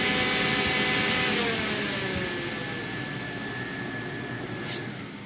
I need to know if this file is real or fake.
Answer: real